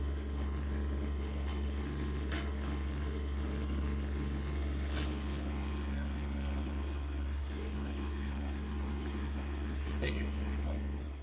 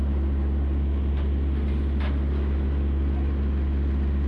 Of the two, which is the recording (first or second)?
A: second